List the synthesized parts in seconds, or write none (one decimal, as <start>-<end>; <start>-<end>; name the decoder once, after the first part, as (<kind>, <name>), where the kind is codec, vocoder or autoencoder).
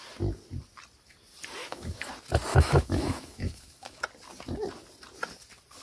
1.6-2.1 (autoencoder, DAC-VAE); 2.5-4.0